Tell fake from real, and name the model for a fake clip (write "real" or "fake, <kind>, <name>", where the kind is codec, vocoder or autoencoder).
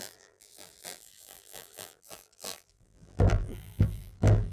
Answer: fake, vocoder, BigVGAN v2